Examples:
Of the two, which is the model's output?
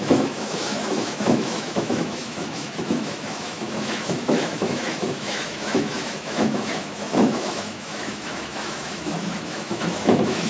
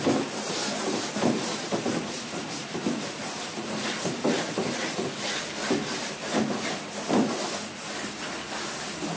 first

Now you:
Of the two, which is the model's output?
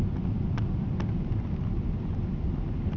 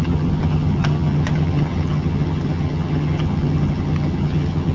second